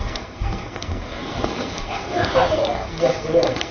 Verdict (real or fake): fake